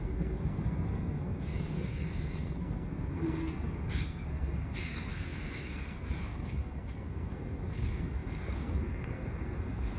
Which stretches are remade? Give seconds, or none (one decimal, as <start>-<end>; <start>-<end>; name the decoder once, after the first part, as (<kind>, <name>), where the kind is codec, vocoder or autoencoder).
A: 0.0-10.0 (codec, SNAC)